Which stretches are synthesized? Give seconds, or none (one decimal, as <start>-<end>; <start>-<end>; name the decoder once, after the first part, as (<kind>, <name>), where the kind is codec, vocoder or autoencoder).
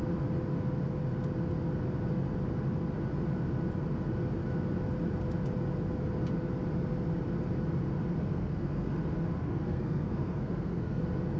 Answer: 8.2-9.0 (codec, SNAC); 9.4-11.0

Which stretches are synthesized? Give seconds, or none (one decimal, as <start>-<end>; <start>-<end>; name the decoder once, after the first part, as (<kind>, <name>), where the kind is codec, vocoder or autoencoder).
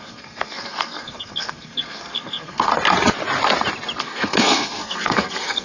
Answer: 0.0-2.7 (codec, SNAC); 4.0-5.6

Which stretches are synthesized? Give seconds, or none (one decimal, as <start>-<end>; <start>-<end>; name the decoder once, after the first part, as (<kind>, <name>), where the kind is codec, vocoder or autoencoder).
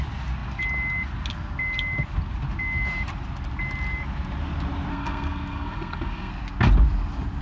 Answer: 4.9-6.3 (codec, SNAC)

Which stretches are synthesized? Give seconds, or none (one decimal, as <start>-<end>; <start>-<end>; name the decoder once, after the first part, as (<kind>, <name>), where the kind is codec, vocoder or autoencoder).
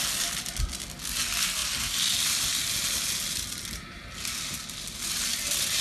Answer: none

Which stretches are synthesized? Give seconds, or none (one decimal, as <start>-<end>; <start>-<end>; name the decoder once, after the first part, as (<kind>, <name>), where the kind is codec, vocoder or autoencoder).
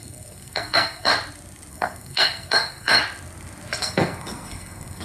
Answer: 0.0-1.1 (codec, SNAC); 1.7-3.0; 3.8-5.0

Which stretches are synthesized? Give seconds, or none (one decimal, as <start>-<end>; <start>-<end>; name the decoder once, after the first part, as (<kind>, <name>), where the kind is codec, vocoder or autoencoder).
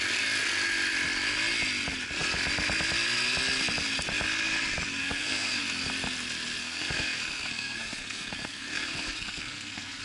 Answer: 5.0-5.6 (codec, SNAC); 6.6-10.0